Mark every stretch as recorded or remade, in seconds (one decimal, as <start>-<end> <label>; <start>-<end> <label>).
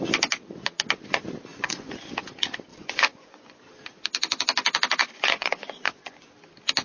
0.0-1.5 recorded; 1.5-2.0 remade; 2.0-2.7 recorded; 2.7-3.6 remade; 3.6-5.0 recorded; 5.0-6.3 remade; 6.3-6.8 recorded